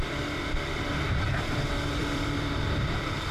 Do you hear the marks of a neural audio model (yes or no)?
yes